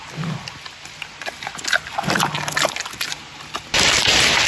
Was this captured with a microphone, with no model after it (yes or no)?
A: yes